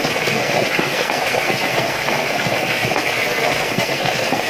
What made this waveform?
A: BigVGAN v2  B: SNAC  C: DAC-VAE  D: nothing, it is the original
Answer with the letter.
B